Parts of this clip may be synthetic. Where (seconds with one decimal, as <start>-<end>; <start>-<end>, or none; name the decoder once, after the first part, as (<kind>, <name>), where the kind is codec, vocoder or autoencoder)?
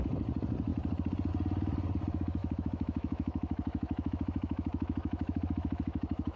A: 2.4-6.4 (autoencoder, DAC-VAE)